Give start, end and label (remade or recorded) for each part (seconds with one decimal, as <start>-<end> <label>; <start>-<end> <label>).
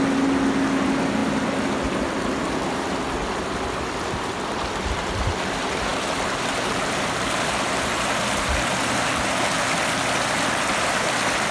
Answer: 0.0-11.5 recorded